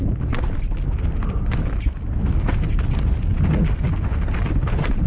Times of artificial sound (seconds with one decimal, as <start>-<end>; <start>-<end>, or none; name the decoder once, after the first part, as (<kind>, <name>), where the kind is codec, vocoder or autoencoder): none

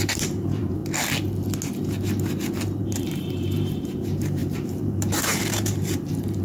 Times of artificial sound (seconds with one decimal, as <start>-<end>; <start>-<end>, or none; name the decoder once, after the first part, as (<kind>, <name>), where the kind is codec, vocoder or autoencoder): 0.0-0.8 (vocoder, BigVGAN v2); 2.8-6.4

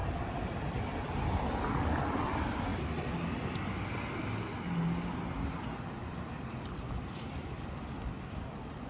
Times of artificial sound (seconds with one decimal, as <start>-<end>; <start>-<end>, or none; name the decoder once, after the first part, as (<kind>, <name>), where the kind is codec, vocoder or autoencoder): 2.7-4.2 (vocoder, BigVGAN v2); 6.0-8.9

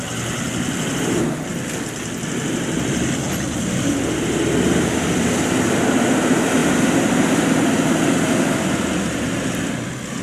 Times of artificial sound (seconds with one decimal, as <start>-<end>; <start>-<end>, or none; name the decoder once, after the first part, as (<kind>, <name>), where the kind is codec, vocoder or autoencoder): none

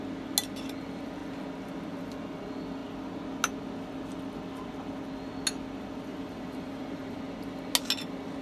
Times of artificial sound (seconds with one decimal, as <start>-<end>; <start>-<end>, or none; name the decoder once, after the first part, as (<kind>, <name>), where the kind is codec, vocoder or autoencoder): 6.1-7.2 (vocoder, BigVGAN v2)

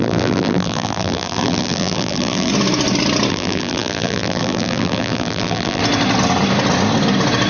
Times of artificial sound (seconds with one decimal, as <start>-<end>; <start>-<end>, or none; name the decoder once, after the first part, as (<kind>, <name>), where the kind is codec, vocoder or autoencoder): 0.0-2.5 (vocoder, BigVGAN v2); 3.3-5.8